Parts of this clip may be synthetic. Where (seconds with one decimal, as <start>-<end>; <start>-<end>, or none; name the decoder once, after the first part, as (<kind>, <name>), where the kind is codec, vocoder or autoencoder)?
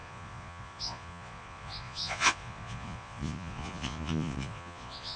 0.0-5.2 (vocoder, Vocos)